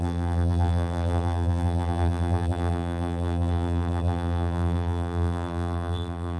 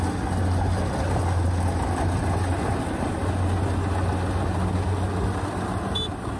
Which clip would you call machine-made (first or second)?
first